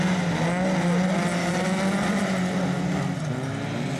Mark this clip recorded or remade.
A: recorded